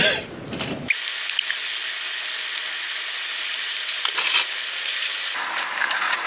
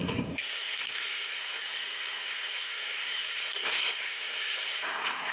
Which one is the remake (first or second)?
second